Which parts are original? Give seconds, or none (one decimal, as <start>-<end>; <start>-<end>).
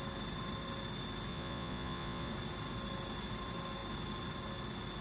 0.0-1.3; 2.3-5.0